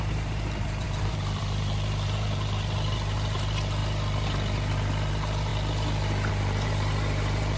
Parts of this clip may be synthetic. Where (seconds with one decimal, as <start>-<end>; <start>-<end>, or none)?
0.0-3.8; 5.1-5.5; 6.3-7.6